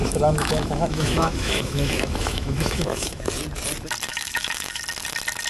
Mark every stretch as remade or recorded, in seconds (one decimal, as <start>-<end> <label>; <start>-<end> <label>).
0.0-3.3 remade; 3.3-4.1 recorded; 4.1-4.8 remade; 4.8-5.5 recorded